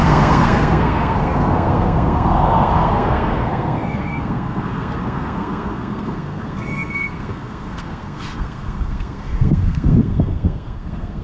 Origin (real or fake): fake